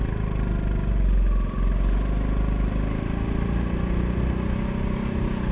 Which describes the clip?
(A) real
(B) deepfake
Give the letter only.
A